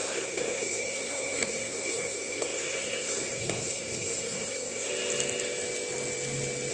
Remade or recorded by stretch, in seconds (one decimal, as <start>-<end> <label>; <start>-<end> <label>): 0.0-4.9 remade; 4.9-6.7 recorded